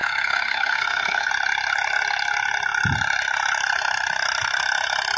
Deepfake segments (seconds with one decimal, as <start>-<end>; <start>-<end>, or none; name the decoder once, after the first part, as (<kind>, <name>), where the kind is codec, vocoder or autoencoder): 0.0-1.3 (codec, SNAC)

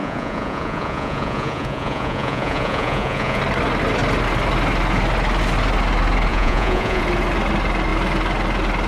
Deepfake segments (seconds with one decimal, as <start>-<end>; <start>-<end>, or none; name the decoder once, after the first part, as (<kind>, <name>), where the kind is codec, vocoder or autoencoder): 0.0-3.4 (vocoder, Vocos); 6.3-7.0

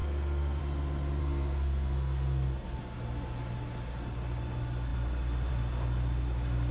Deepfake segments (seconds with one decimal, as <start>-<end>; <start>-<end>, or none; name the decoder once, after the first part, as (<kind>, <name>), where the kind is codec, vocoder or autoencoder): 0.0-0.6 (codec, SNAC); 1.2-2.8

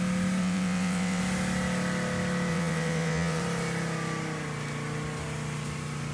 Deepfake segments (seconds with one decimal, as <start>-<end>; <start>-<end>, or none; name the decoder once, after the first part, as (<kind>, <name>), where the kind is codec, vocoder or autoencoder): 0.4-1.2 (vocoder, WaveNeXt); 2.5-3.4

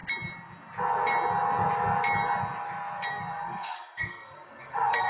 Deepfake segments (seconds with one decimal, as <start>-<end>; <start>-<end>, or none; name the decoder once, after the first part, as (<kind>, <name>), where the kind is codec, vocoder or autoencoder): 3.1-5.1 (codec, SNAC)

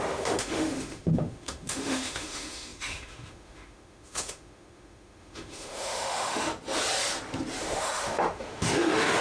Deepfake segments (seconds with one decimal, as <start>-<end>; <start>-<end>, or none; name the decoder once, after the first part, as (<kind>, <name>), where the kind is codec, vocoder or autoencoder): 0.0-6.5 (autoencoder, DAC-VAE); 7.6-9.2